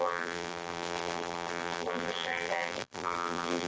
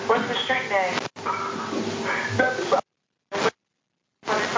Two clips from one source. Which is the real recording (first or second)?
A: second